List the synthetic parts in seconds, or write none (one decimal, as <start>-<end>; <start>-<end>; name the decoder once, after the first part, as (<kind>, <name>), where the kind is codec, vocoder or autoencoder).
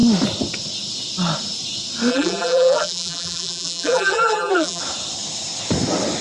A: 2.1-4.8 (vocoder, BigVGAN v2)